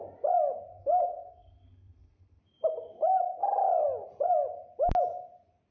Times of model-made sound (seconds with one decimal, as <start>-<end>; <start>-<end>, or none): 0.7-2.4